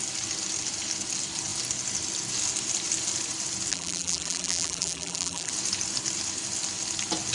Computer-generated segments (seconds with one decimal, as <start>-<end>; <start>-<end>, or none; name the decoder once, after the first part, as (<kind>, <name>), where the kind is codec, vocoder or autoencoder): 3.7-5.5 (vocoder, BigVGAN v2)